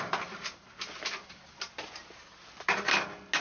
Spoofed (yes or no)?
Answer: no